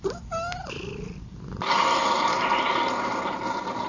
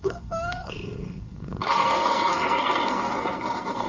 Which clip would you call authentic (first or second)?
first